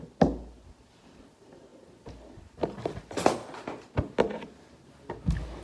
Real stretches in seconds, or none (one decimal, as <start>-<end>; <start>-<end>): 0.0-5.6

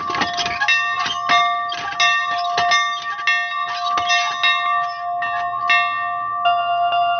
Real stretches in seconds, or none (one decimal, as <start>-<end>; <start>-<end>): 0.0-7.2

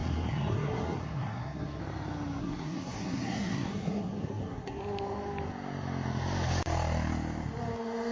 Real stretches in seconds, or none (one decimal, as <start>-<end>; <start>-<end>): 1.8-2.4; 4.8-8.1

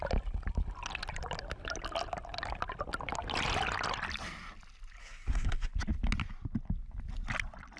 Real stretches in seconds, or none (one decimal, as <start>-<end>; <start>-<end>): 0.0-5.0; 5.7-7.8